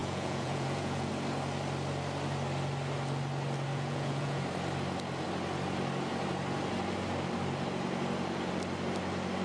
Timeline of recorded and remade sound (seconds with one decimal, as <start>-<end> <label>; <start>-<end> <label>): 0.0-1.1 remade; 1.1-3.7 recorded; 3.7-4.4 remade; 4.4-9.4 recorded